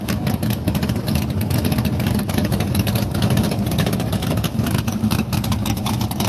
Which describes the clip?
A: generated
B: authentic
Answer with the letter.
A